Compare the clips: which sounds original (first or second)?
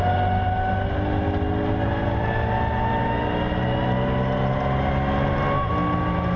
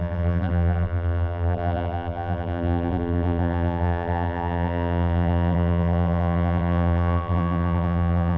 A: first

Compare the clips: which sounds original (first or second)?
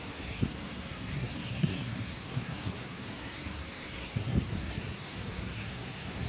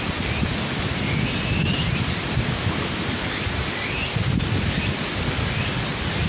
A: second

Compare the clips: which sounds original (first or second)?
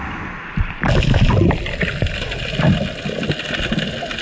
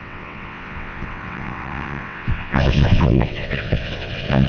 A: first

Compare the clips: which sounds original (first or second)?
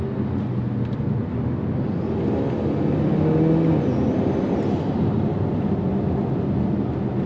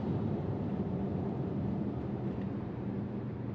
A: first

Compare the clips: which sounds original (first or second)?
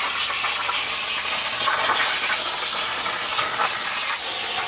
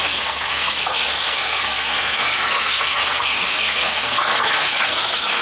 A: first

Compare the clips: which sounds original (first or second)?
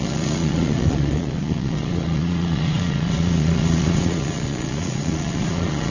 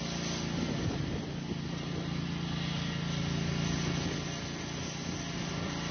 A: second